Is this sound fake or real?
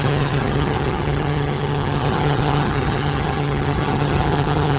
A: fake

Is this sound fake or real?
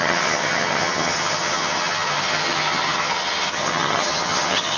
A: fake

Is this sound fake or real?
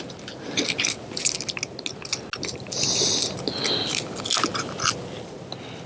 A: real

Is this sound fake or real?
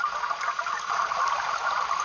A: real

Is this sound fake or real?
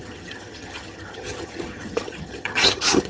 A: fake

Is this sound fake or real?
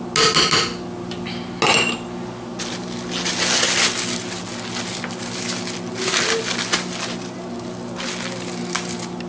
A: real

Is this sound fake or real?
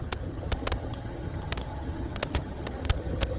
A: fake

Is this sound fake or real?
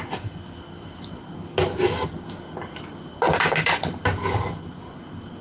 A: real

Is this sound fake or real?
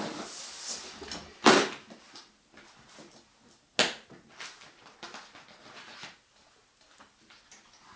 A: real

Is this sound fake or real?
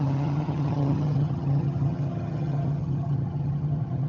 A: fake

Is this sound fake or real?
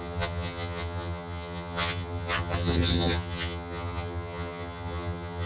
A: fake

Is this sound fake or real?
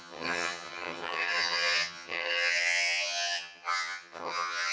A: fake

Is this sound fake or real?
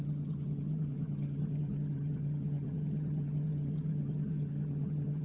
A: fake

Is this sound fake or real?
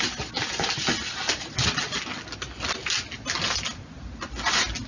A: real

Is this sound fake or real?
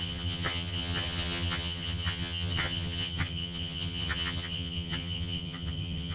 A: fake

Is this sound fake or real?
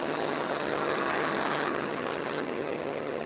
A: fake